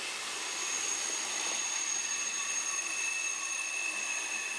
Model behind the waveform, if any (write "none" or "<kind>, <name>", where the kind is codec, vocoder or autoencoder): none